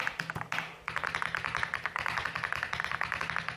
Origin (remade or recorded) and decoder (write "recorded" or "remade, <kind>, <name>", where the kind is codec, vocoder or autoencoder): recorded